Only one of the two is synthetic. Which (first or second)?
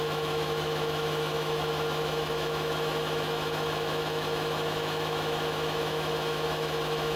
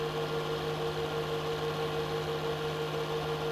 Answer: first